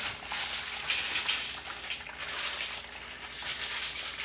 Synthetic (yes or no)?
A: no